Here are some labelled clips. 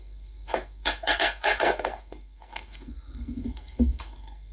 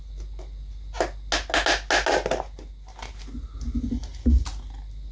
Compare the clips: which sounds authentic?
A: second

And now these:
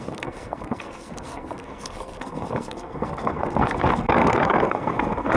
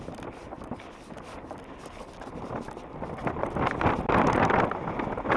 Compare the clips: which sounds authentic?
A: second